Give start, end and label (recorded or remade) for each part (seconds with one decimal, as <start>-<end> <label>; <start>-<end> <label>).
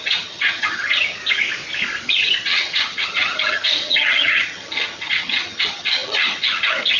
0.0-1.2 remade; 1.2-2.2 recorded; 2.2-7.0 remade